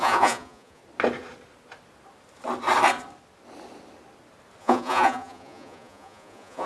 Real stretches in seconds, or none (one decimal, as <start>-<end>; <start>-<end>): 0.8-4.6